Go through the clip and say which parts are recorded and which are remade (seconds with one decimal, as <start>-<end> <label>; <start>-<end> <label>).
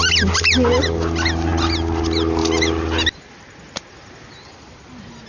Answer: 0.0-5.3 recorded